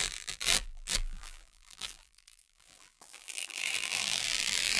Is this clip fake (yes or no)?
yes